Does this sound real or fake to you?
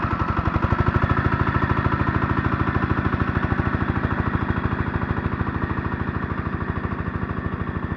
real